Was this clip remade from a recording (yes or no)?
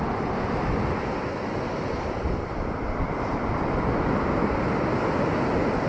no